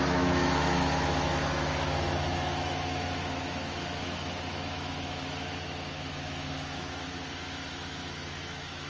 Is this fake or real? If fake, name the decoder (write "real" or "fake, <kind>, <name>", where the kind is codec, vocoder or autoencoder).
fake, autoencoder, DAC-VAE